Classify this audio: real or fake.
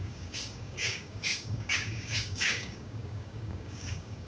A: fake